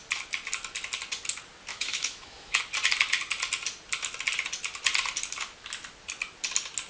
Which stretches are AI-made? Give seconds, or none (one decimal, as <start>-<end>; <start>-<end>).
1.7-2.6